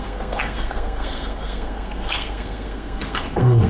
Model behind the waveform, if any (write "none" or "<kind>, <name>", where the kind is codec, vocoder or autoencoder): codec, SNAC